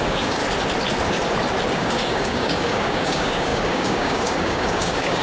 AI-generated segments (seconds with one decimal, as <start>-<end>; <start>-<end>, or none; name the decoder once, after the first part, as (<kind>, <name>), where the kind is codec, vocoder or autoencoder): 0.0-0.4 (codec, DAC); 1.7-5.2